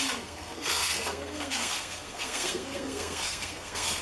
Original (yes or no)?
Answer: no